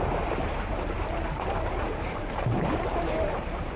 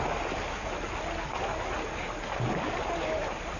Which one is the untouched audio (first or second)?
second